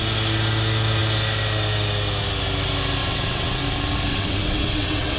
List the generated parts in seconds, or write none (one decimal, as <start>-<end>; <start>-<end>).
3.0-3.6; 4.1-5.2